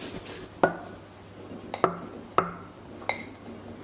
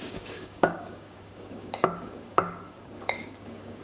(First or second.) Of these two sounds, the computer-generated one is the second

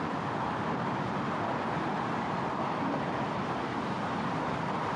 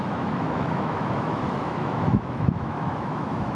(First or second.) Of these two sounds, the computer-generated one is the second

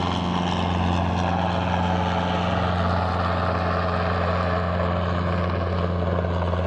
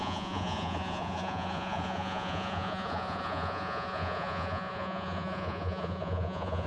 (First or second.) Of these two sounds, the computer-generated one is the second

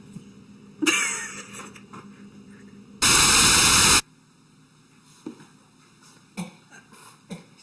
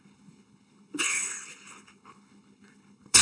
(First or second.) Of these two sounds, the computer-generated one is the second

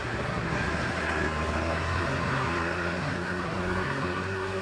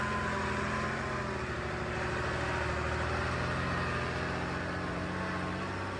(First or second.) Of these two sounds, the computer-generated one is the first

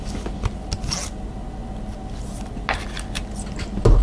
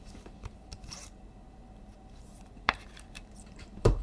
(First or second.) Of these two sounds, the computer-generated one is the second